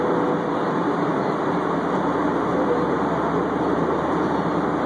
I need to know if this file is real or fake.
real